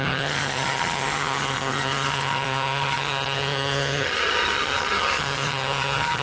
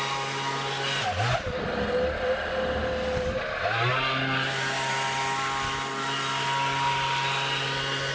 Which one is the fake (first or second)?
first